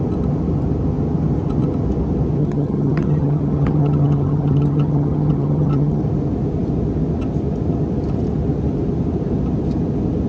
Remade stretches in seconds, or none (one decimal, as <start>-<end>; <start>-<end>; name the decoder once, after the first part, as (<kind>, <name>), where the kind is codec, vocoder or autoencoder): 2.4-6.0 (vocoder, HiFi-GAN)